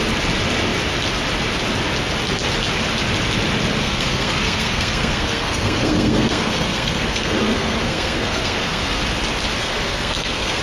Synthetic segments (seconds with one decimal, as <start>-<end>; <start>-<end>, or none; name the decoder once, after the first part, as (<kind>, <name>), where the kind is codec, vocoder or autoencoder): 3.8-9.0 (codec, SNAC); 9.6-10.6